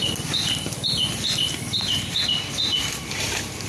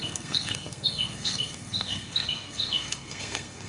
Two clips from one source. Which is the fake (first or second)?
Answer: second